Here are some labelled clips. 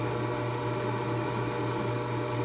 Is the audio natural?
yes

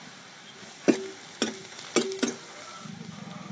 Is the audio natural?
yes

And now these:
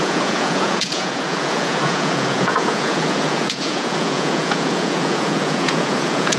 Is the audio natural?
no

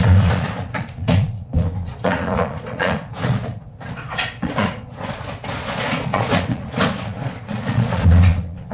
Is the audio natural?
no